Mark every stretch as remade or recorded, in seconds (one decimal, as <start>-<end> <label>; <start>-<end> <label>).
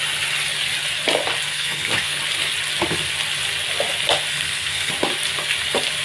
0.0-1.5 recorded; 1.5-2.2 remade; 2.2-4.3 recorded; 4.3-4.9 remade; 4.9-6.0 recorded